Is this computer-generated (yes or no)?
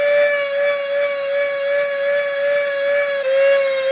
no